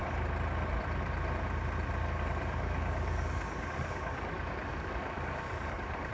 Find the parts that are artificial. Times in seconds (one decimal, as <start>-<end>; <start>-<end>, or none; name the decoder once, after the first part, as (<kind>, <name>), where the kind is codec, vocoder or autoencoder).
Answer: 2.0-6.1 (codec, DAC)